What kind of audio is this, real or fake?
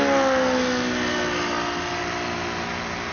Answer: real